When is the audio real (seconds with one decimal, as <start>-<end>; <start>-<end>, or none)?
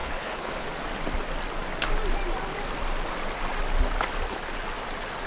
0.6-5.3